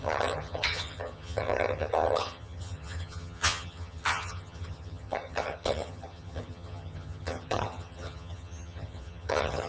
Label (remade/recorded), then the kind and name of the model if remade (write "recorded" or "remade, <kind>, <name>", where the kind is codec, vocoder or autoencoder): remade, vocoder, HiFi-GAN